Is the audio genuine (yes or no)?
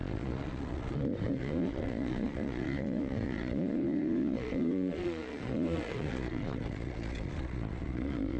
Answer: no